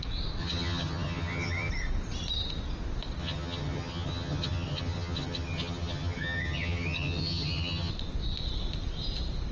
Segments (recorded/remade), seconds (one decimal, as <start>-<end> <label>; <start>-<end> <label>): 0.0-0.4 recorded; 0.4-1.7 remade; 1.7-3.2 recorded; 3.2-7.9 remade; 7.9-9.5 recorded